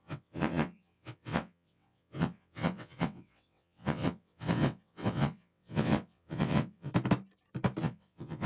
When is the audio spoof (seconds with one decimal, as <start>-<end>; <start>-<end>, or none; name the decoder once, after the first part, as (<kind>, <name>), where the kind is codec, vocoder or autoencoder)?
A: 0.0-6.9 (vocoder, WaveNeXt); 7.8-8.5